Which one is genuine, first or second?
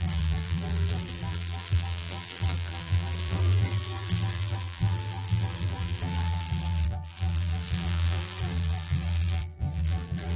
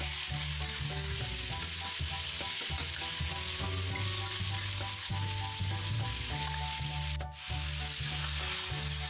second